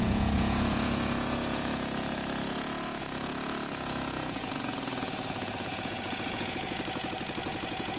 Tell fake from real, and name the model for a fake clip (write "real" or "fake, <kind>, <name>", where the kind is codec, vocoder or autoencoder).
fake, vocoder, Vocos